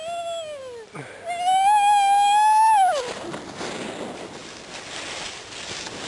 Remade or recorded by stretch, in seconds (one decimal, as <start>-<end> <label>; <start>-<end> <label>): 0.0-6.1 recorded